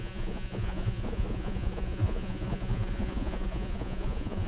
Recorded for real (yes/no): no